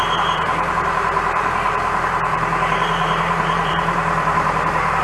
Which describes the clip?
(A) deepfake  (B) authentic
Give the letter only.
A